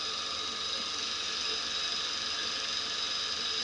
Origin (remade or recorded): recorded